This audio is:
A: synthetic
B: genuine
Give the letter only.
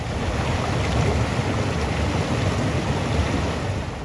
B